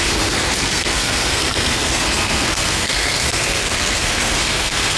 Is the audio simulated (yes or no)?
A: yes